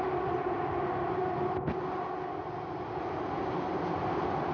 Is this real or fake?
real